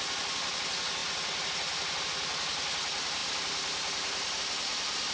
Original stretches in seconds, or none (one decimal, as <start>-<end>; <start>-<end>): 0.0-5.1